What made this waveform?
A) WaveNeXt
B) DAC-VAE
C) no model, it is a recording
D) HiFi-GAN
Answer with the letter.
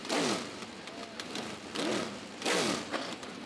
C